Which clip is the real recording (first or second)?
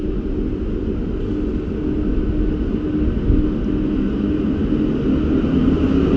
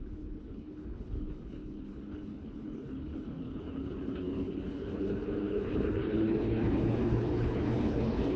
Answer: first